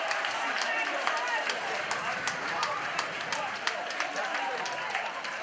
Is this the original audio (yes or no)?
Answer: no